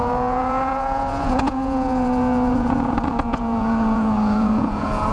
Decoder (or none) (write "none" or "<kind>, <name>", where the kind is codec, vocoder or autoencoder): vocoder, Vocos